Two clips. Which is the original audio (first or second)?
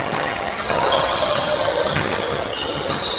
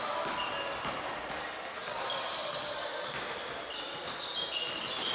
second